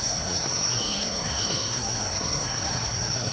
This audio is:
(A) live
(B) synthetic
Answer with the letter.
B